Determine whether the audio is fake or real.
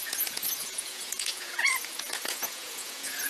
fake